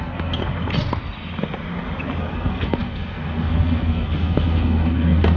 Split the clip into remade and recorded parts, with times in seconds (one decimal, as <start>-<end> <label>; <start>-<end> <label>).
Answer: 0.0-0.4 remade; 0.4-2.2 recorded; 2.2-5.4 remade